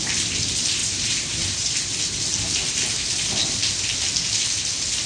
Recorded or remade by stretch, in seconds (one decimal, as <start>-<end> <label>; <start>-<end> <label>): 0.0-0.8 recorded; 0.8-1.7 remade; 1.7-5.1 recorded